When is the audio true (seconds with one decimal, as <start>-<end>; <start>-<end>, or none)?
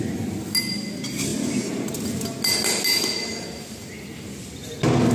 0.0-5.1